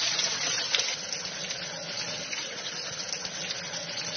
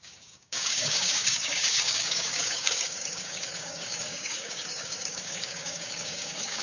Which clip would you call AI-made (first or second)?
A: second